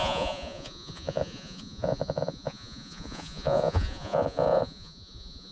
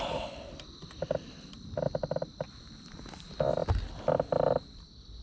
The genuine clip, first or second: second